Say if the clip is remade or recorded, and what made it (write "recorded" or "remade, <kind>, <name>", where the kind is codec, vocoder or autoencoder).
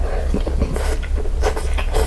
recorded